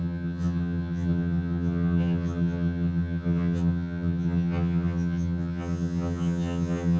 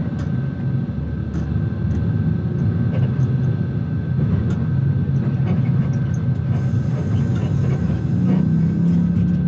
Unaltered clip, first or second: second